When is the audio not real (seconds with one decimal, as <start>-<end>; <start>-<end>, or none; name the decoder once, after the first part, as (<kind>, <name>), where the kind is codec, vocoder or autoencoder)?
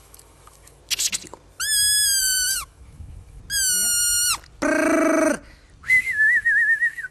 0.0-0.8 (autoencoder, DAC-VAE); 2.2-3.4; 5.9-7.1